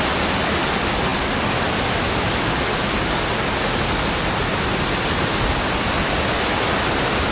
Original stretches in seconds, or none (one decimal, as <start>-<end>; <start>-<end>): 0.0-7.3